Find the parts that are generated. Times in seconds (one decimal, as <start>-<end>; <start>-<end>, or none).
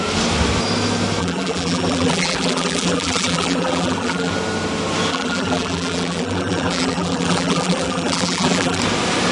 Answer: 1.2-4.3; 5.1-8.8